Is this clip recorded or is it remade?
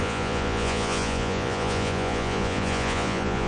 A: remade